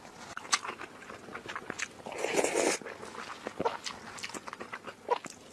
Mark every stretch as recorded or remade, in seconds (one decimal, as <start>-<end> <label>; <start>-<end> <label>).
0.0-5.5 recorded